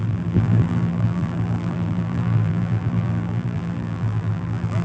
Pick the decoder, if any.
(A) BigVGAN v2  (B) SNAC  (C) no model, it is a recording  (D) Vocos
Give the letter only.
A